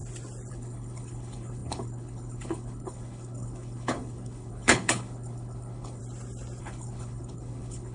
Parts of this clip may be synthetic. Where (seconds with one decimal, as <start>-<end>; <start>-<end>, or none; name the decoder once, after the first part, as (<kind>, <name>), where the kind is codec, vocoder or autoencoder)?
0.5-6.0 (codec, HILCodec); 6.6-7.9